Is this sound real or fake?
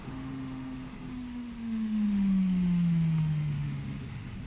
fake